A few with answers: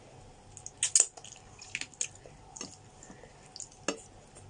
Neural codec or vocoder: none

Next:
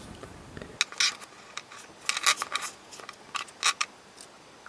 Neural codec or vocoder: none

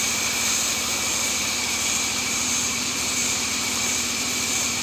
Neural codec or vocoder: vocoder, BigVGAN v2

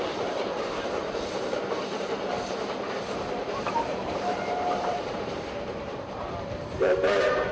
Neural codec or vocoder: vocoder, BigVGAN v2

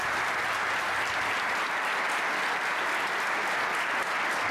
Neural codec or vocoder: none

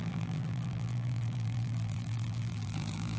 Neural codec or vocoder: vocoder, BigVGAN v2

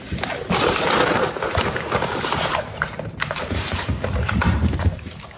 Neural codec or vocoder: vocoder, BigVGAN v2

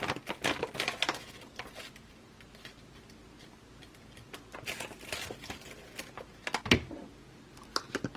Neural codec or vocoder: none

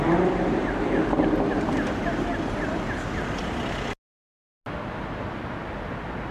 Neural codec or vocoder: none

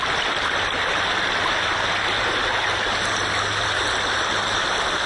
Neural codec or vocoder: vocoder, BigVGAN v2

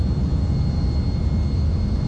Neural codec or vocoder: none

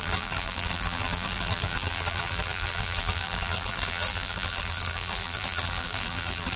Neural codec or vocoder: vocoder, BigVGAN v2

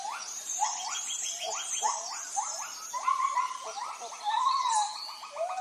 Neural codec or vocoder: vocoder, BigVGAN v2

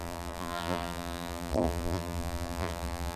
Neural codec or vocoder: vocoder, BigVGAN v2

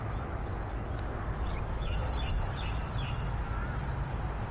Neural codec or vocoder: none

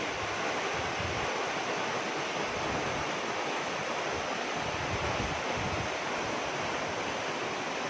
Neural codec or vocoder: none